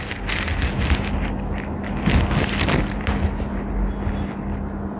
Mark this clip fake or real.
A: real